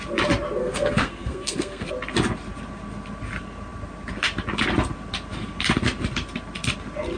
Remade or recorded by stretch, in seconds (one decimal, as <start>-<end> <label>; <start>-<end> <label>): 0.0-0.6 recorded; 0.6-1.9 remade; 1.9-7.2 recorded